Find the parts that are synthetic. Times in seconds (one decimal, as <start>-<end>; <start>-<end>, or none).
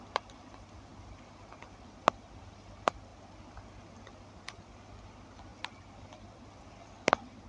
none